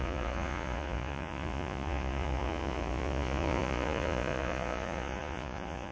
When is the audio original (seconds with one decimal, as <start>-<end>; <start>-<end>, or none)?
none